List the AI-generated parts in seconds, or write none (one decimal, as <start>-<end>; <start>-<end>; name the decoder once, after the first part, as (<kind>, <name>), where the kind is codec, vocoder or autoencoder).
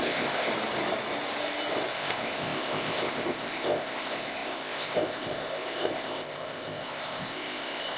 0.0-0.5 (codec, ZipCodec); 1.9-8.0